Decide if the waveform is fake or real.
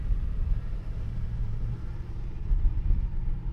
fake